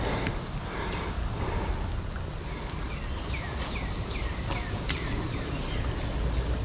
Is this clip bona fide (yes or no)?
yes